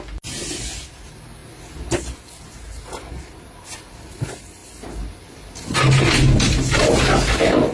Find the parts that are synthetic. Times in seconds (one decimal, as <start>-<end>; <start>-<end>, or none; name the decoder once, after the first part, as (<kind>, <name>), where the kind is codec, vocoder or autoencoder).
none